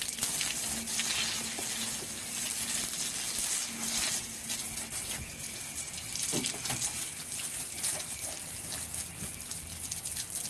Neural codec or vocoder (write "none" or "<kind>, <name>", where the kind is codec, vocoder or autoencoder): none